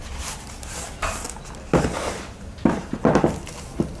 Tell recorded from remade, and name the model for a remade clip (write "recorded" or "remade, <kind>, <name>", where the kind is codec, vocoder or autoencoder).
recorded